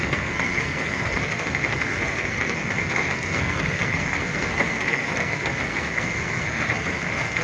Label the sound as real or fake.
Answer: fake